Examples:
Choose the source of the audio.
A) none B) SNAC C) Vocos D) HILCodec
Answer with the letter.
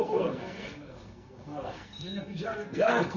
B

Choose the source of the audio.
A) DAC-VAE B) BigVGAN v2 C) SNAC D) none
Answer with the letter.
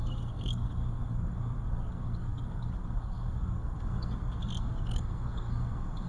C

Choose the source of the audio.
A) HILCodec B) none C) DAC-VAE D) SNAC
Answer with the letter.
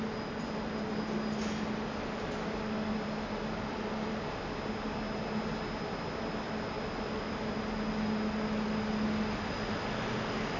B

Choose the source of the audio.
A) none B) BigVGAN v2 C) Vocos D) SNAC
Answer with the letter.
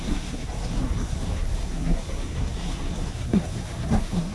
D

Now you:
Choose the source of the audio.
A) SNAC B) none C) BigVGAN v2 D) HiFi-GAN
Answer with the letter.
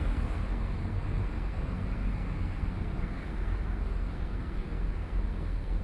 A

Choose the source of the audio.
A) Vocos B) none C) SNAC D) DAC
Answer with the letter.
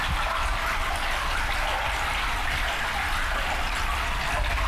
B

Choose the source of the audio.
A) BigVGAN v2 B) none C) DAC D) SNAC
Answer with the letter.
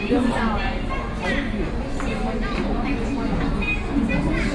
B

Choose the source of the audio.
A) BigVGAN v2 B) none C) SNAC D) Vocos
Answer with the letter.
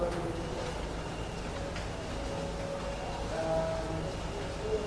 B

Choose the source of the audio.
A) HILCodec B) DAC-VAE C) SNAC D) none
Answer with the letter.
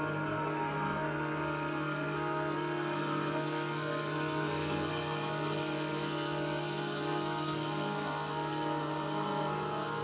C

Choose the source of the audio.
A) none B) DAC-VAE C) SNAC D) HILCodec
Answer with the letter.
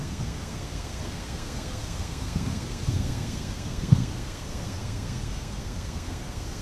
C